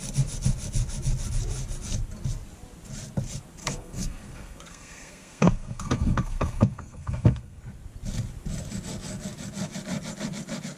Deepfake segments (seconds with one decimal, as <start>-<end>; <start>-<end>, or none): 3.6-7.6